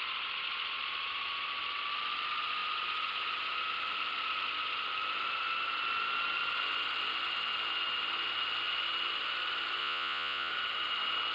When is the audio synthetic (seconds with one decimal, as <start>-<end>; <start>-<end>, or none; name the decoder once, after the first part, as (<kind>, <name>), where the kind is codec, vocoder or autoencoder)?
9.8-10.5 (vocoder, Vocos)

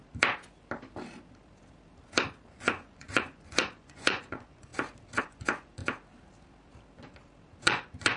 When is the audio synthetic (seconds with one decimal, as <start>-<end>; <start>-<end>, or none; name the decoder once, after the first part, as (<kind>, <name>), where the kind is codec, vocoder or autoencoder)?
2.5-4.7 (vocoder, Vocos); 5.2-5.8; 7.6-8.2

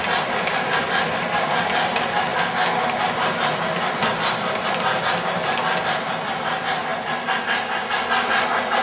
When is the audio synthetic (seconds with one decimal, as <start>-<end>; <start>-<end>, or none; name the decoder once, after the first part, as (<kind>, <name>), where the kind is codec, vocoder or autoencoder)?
none

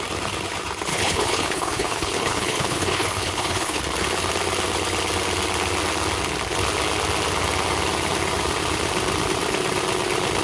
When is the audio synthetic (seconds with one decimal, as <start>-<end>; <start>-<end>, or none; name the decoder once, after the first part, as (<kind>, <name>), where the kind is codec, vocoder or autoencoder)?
0.9-3.8 (codec, HILCodec)

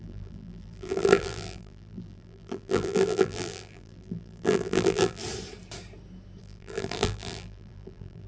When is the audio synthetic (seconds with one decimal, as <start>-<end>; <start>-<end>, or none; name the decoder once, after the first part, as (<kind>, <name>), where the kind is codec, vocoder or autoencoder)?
0.0-5.2 (vocoder, BigVGAN v2); 6.4-8.3

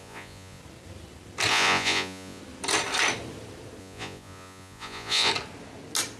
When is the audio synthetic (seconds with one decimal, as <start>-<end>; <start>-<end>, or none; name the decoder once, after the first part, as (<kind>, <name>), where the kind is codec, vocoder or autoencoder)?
0.0-0.6 (vocoder, Vocos); 1.5-2.4; 3.8-5.3

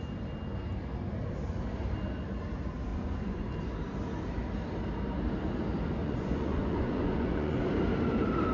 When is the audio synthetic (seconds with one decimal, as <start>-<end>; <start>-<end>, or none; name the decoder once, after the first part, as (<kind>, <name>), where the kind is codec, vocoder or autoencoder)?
2.9-3.5 (vocoder, Vocos); 6.0-7.6